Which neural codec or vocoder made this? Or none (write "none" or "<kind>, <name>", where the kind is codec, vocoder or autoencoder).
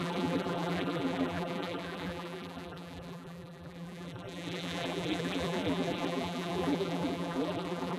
vocoder, BigVGAN v2